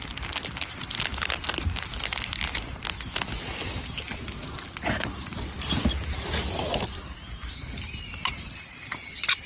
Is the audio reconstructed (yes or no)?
no